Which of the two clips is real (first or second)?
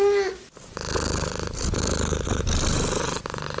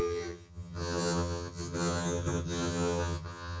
first